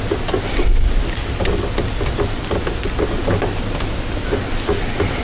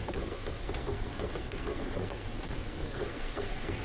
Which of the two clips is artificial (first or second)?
second